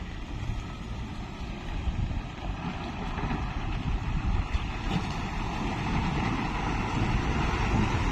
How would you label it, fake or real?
fake